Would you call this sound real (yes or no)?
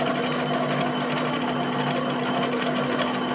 yes